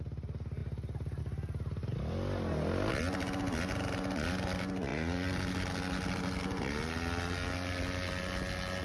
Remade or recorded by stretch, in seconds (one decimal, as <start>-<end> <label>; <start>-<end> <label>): 0.0-8.8 recorded